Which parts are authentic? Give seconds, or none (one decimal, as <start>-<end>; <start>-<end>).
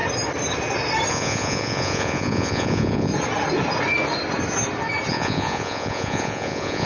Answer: 0.0-1.1; 3.1-5.1